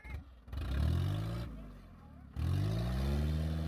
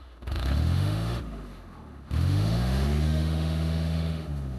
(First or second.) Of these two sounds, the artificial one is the second